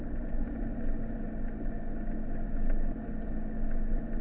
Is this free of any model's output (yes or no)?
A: yes